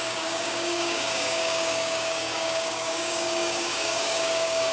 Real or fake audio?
fake